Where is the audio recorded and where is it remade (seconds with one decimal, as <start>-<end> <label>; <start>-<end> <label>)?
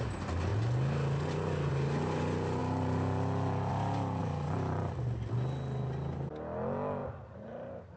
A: 0.0-4.2 recorded; 4.2-4.9 remade; 4.9-7.0 recorded; 7.0-8.0 remade